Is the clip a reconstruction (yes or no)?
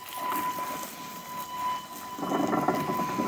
no